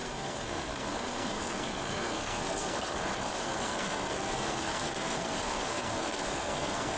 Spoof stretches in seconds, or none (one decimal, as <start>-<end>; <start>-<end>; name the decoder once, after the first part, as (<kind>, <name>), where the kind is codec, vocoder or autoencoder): 0.0-7.0 (codec, SNAC)